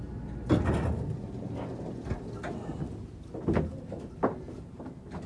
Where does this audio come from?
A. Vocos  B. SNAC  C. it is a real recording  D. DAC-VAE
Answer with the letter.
C